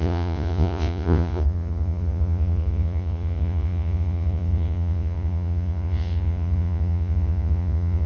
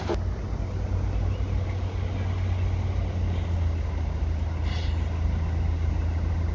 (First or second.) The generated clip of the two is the first